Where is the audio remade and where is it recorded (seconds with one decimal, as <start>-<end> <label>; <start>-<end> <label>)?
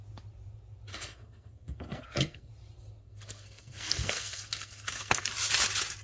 0.0-0.9 recorded; 0.9-2.5 remade; 2.5-3.0 recorded; 3.0-5.3 remade; 5.3-6.0 recorded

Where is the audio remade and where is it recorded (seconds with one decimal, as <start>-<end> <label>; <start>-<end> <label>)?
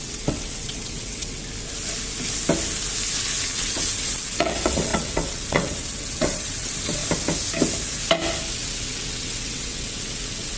0.0-1.4 remade; 1.4-3.2 recorded; 3.2-7.0 remade; 7.0-8.5 recorded; 8.5-10.6 remade